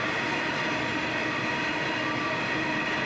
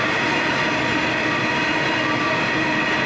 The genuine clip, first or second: second